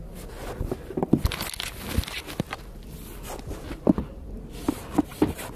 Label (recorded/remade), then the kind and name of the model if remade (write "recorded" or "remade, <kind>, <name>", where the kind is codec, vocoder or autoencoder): recorded